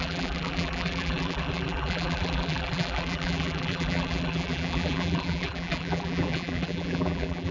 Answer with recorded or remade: remade